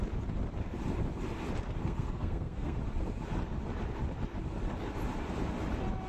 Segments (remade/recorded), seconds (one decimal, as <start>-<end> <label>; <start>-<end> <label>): 0.0-1.8 recorded; 1.8-2.8 remade; 2.8-6.1 recorded